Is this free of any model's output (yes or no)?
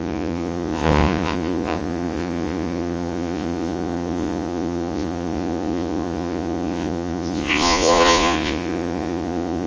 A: no